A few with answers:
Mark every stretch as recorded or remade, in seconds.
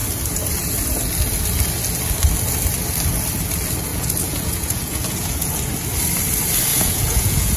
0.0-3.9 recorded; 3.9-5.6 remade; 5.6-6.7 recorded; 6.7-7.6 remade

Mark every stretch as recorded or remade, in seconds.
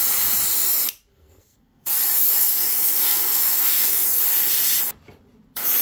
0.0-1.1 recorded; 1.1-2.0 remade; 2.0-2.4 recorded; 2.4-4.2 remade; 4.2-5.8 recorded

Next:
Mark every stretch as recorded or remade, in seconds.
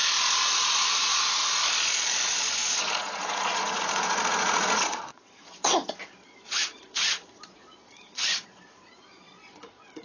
0.0-0.7 recorded; 0.7-1.4 remade; 1.4-2.8 recorded; 2.8-10.0 remade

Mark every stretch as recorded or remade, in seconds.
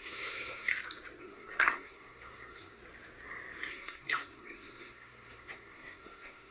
0.0-0.7 remade; 0.7-1.2 recorded; 1.2-2.8 remade; 2.8-3.7 recorded; 3.7-6.5 remade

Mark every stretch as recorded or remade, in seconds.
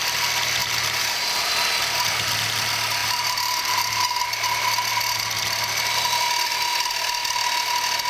0.0-0.6 recorded; 0.6-1.5 remade; 1.5-3.0 recorded; 3.0-4.2 remade; 4.2-8.1 recorded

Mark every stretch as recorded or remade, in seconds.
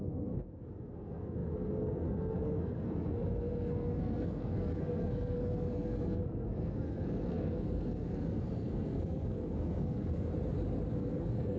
0.0-10.3 remade; 10.3-10.9 recorded; 10.9-11.6 remade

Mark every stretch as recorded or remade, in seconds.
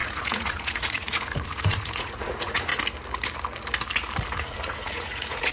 0.0-2.7 remade; 2.7-4.4 recorded; 4.4-5.5 remade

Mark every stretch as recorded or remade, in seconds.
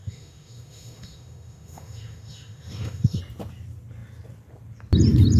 0.0-3.2 remade; 3.2-5.4 recorded